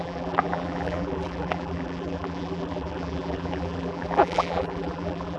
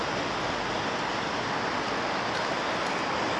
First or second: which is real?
second